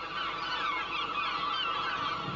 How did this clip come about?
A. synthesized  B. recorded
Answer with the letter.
B